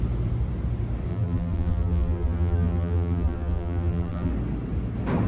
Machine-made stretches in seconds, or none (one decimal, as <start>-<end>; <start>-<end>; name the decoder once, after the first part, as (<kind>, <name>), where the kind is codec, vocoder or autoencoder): 1.1-4.3 (vocoder, BigVGAN v2)